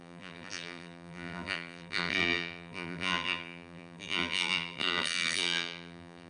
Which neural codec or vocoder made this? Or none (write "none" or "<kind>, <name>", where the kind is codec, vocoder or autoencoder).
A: vocoder, BigVGAN v2